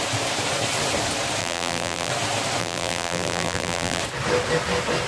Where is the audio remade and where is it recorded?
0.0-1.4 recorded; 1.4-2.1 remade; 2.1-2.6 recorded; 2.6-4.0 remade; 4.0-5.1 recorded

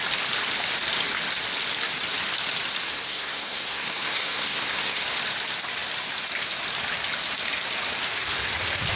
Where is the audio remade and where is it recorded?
0.0-2.8 recorded; 2.8-5.0 remade; 5.0-9.0 recorded

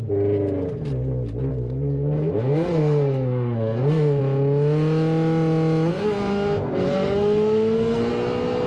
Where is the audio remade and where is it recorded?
0.0-1.5 recorded; 1.5-4.2 remade; 4.2-5.9 recorded; 5.9-8.1 remade; 8.1-8.7 recorded

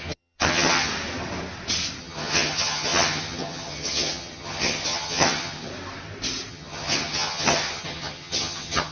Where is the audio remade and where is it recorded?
0.0-0.9 remade; 0.9-2.0 recorded; 2.0-5.7 remade; 5.7-6.5 recorded; 6.5-8.9 remade

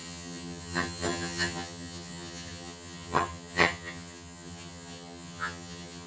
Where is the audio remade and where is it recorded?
0.0-6.1 remade

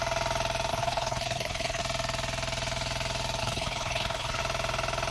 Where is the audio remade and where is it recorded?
0.0-0.7 recorded; 0.7-1.8 remade; 1.8-3.4 recorded; 3.4-4.4 remade; 4.4-5.1 recorded

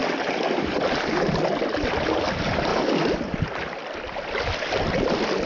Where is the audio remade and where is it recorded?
0.0-1.5 remade; 1.5-5.5 recorded